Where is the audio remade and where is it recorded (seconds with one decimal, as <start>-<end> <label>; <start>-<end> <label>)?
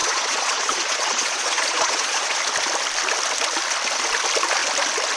0.0-2.4 remade; 2.4-5.2 recorded